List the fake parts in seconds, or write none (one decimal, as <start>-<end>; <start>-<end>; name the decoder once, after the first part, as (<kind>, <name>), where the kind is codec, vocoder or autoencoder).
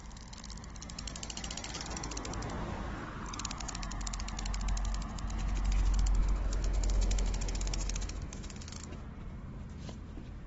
6.2-9.0 (autoencoder, DAC-VAE)